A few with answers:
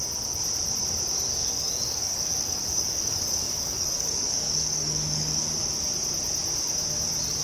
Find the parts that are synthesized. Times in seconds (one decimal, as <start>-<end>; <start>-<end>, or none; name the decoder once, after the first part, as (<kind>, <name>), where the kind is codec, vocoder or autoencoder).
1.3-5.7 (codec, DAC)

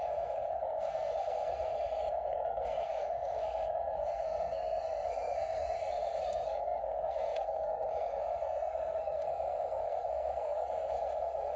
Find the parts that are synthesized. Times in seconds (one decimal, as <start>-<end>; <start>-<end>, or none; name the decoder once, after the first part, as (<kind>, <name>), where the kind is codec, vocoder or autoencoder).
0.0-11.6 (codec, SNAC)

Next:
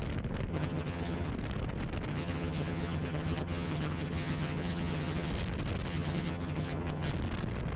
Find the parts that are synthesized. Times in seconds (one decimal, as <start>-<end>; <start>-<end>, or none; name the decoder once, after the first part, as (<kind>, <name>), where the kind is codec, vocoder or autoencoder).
0.5-1.3 (vocoder, HiFi-GAN); 2.1-5.3; 5.9-7.1

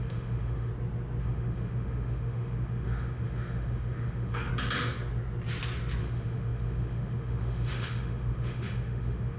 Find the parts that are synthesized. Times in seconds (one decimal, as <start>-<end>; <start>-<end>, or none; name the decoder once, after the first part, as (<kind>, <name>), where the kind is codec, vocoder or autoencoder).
0.0-0.7 (autoencoder, DAC-VAE); 1.2-4.5; 6.0-9.4